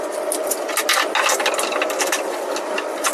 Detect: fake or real real